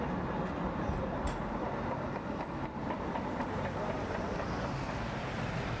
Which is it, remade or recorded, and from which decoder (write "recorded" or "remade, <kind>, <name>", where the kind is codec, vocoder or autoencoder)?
recorded